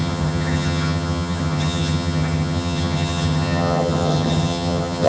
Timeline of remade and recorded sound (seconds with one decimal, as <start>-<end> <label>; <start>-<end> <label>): 0.0-5.1 remade